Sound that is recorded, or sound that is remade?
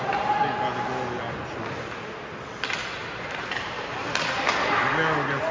recorded